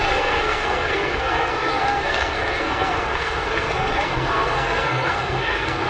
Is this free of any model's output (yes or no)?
no